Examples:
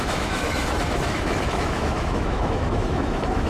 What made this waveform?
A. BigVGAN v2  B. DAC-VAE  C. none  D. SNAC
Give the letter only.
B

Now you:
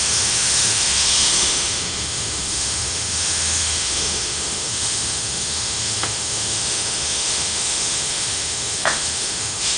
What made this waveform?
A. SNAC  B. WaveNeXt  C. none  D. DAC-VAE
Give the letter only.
D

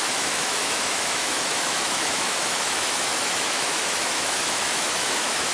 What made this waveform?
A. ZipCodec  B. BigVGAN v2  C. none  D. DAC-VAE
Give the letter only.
D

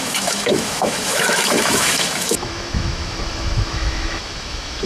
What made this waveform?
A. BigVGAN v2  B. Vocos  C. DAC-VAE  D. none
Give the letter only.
C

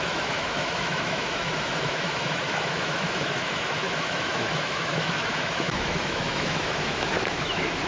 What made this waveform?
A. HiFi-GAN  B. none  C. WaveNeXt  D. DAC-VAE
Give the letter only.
D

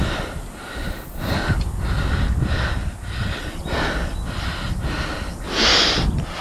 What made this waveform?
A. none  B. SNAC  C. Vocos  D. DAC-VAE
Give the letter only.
A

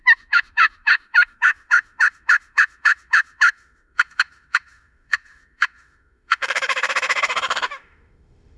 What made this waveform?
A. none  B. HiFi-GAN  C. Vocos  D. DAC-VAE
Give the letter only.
D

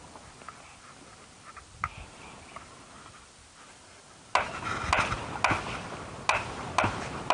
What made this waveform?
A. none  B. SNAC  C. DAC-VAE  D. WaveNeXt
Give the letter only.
A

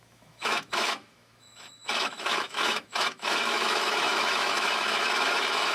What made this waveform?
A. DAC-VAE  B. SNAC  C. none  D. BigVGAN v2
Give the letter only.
A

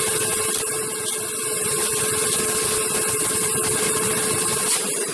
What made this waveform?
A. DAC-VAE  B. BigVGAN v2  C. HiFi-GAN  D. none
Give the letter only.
D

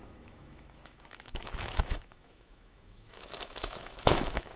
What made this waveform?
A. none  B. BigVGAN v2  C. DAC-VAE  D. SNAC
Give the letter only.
C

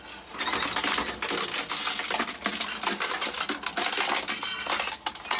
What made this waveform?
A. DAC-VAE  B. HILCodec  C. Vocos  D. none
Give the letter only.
D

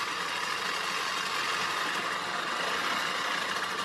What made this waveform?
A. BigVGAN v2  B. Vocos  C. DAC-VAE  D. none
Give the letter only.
D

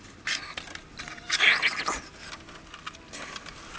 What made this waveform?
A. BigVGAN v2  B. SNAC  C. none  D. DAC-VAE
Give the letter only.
C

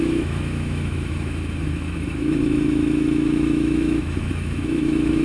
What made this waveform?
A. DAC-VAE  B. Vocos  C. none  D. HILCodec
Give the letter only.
A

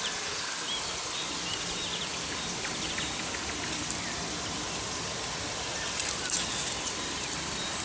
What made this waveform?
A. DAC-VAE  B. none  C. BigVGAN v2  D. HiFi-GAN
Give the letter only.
B